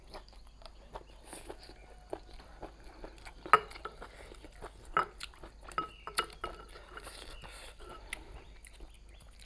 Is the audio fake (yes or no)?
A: no